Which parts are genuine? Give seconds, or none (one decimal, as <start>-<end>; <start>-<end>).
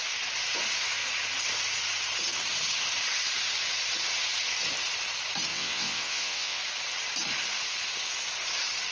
0.0-5.5; 6.6-8.9